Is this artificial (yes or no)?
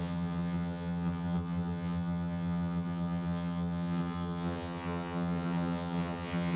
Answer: yes